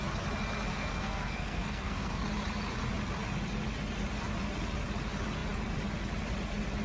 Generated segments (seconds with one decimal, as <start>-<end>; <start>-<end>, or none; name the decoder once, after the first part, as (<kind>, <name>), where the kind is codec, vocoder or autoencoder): 0.7-2.2 (codec, SNAC)